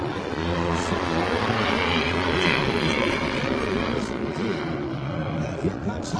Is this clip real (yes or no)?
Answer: no